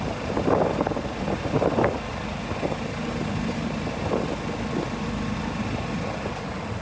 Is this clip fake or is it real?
real